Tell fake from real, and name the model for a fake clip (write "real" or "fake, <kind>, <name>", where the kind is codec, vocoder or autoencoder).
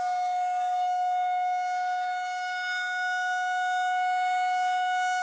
fake, codec, DAC